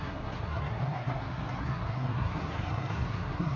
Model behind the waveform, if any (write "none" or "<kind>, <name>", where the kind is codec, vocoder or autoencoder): codec, SNAC